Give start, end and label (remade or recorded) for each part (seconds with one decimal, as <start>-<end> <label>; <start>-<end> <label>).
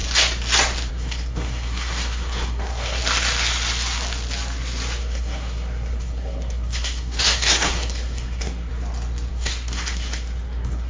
0.0-0.9 recorded; 0.9-3.0 remade; 3.0-5.0 recorded; 5.0-8.7 remade; 8.7-9.3 recorded; 9.3-10.9 remade